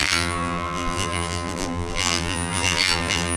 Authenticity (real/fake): fake